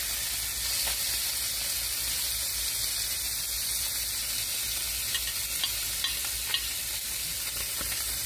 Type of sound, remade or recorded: recorded